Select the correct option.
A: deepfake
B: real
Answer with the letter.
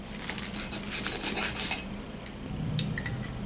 B